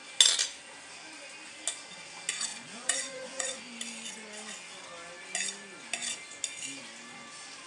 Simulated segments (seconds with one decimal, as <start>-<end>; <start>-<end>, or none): 2.5-3.6